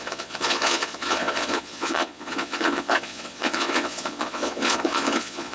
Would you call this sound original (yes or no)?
no